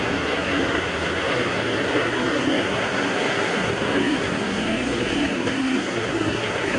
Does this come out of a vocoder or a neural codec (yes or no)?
yes